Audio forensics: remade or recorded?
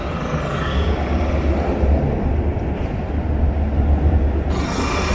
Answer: recorded